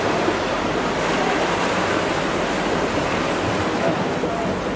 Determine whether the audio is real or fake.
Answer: fake